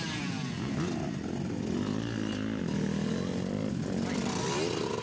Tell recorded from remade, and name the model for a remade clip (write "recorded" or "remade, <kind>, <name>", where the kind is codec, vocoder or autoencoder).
recorded